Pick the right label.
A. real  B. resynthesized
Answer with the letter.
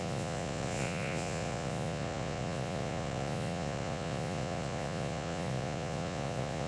B